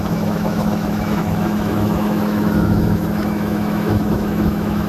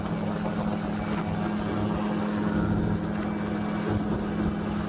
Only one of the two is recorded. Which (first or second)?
second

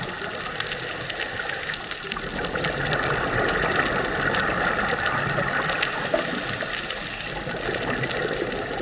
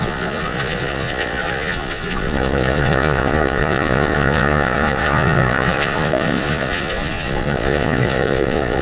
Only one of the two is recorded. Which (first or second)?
first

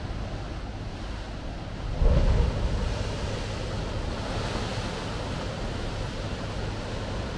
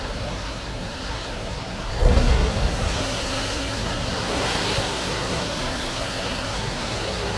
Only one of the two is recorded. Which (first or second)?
first